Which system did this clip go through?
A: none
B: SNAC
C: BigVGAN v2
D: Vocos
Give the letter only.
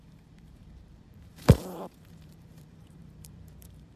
C